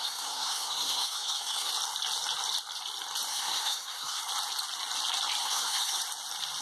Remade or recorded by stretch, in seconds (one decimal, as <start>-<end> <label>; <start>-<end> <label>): 0.0-1.7 remade; 1.7-3.3 recorded; 3.3-4.2 remade; 4.2-5.4 recorded; 5.4-6.0 remade; 6.0-6.6 recorded